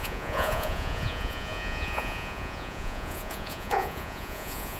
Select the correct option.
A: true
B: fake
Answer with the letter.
B